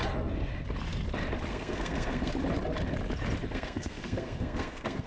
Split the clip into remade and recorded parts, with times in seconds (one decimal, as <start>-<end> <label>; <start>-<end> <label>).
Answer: 0.0-1.5 recorded; 1.5-2.3 remade; 2.3-3.4 recorded; 3.4-5.1 remade